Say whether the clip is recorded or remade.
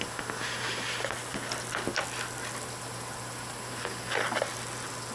recorded